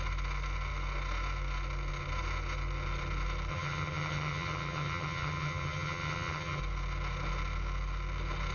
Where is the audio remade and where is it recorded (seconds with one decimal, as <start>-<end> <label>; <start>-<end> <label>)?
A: 0.0-3.5 recorded; 3.5-6.6 remade; 6.6-8.5 recorded